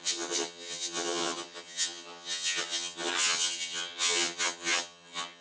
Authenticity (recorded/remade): remade